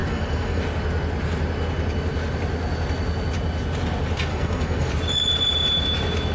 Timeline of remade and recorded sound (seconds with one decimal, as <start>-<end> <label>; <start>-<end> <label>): 0.0-0.6 remade; 0.6-4.3 recorded; 4.3-4.9 remade; 4.9-6.3 recorded